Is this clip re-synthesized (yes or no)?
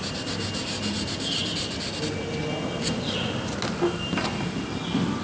no